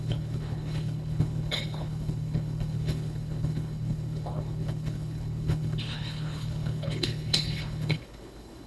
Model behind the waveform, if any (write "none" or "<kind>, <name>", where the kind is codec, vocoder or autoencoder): codec, HILCodec